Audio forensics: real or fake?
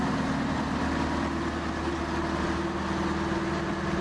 real